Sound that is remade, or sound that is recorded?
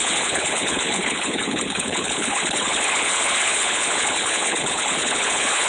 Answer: remade